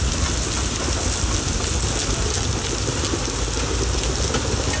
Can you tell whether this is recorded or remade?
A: recorded